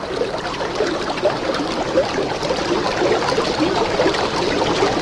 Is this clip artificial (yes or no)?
no